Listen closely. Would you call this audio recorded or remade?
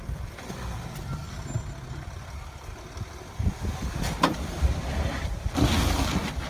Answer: recorded